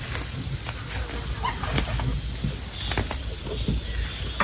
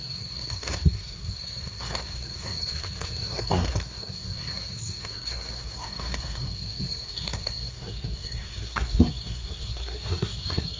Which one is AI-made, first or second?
second